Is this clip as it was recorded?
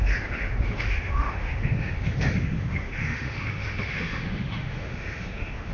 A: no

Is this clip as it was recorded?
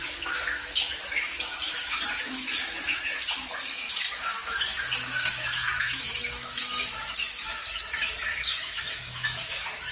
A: no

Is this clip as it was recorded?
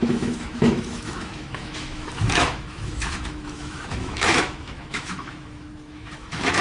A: no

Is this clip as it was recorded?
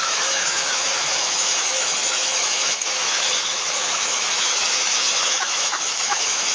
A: no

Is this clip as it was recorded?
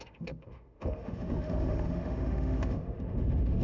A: no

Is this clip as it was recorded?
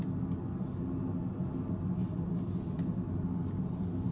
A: yes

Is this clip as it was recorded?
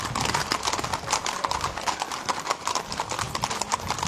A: yes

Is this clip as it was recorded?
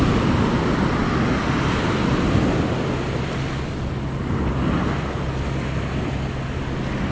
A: yes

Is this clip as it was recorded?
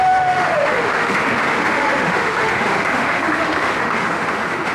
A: no